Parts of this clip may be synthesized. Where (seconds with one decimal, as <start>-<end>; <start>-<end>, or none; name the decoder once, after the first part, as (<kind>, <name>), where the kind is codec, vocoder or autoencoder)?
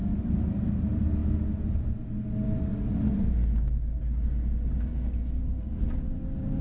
none